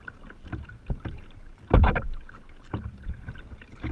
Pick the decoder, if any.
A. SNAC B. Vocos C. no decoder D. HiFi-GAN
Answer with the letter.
C